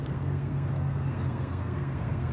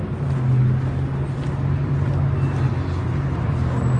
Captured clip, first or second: second